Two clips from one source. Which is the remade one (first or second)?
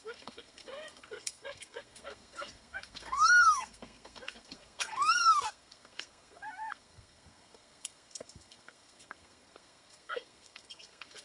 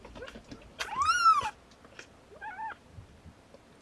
first